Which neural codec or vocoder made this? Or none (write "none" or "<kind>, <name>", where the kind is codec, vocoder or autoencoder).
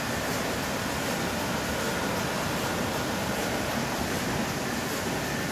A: none